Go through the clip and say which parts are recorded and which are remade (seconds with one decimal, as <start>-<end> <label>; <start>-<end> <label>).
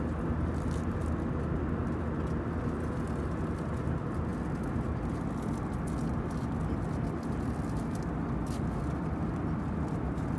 0.0-10.4 recorded